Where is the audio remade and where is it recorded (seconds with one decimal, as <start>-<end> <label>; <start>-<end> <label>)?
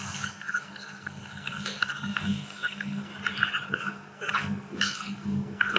0.0-3.1 remade; 3.1-3.7 recorded; 3.7-5.8 remade